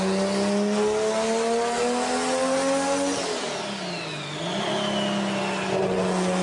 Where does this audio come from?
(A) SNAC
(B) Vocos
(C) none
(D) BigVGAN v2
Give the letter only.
C